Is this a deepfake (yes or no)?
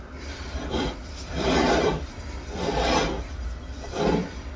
yes